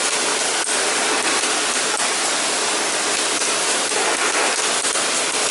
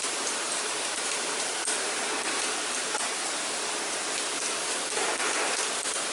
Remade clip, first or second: second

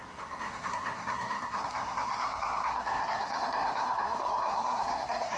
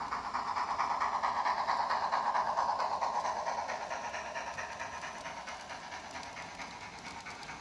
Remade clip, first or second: first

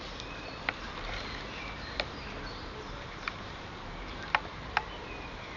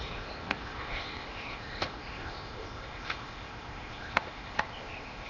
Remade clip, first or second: second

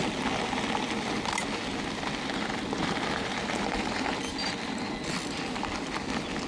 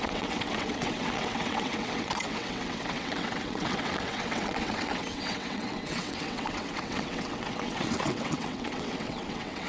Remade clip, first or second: second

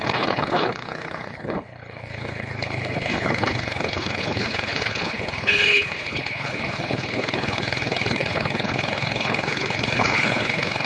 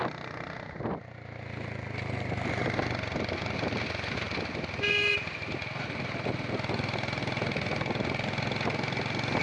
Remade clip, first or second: first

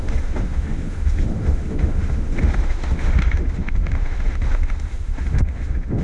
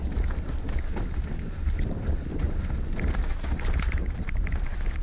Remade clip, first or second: first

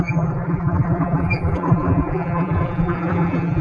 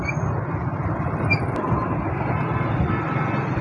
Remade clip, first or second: first